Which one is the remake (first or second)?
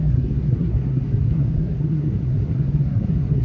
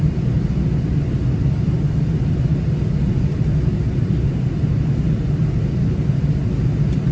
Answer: first